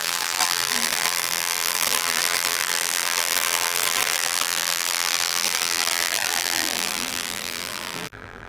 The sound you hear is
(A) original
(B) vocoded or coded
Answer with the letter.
B